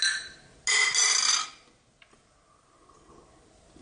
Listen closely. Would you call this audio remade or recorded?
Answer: recorded